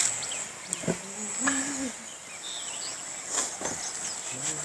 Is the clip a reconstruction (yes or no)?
no